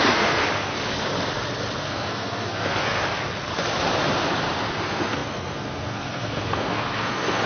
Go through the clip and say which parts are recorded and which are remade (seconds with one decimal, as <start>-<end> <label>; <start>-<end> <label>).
0.0-0.4 remade; 0.4-1.8 recorded; 1.8-3.0 remade; 3.0-4.7 recorded; 4.7-7.5 remade